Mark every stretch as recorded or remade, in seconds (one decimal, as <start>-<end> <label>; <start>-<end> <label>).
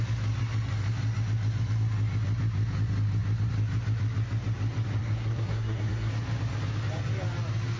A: 0.0-5.0 recorded; 5.0-6.1 remade; 6.1-7.8 recorded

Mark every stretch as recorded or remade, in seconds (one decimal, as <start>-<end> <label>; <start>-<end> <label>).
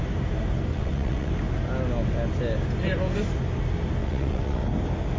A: 0.0-0.7 recorded; 0.7-1.3 remade; 1.3-4.0 recorded; 4.0-4.6 remade; 4.6-5.2 recorded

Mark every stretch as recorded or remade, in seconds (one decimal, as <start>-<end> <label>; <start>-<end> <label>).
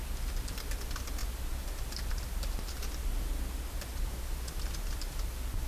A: 0.0-5.7 recorded